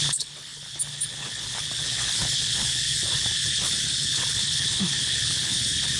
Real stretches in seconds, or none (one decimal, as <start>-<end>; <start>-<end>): none